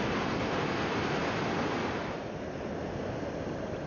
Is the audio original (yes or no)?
no